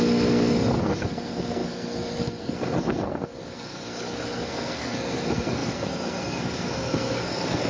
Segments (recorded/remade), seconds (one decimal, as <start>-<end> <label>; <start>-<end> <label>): 0.0-7.7 remade